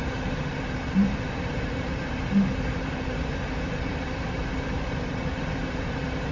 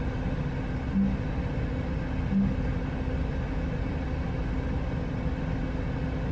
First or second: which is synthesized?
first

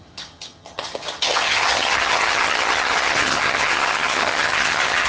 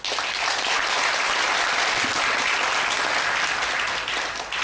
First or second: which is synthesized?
first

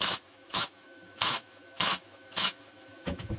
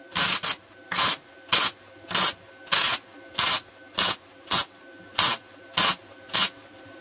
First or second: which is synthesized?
first